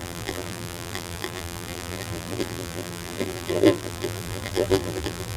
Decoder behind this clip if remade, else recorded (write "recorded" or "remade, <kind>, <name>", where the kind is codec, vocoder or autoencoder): remade, vocoder, BigVGAN v2